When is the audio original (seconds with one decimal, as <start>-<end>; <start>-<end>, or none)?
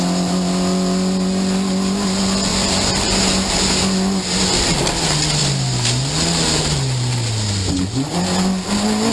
0.0-2.5; 3.2-9.1